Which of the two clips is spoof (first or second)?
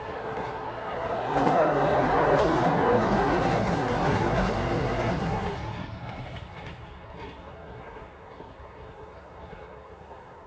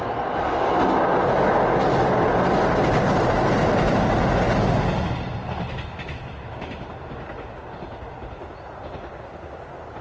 first